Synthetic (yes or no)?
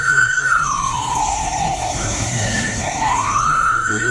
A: yes